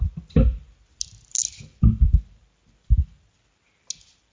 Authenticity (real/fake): real